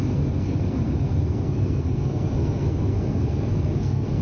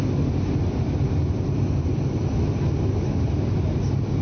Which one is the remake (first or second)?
first